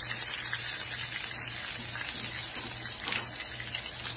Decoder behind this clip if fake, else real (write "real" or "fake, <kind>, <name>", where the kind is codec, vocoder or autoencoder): real